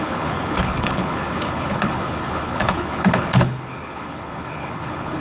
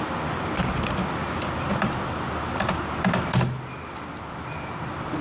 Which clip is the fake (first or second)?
first